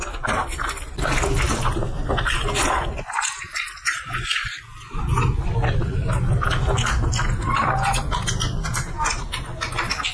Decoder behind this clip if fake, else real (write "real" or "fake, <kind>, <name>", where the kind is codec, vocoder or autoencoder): fake, vocoder, BigVGAN v2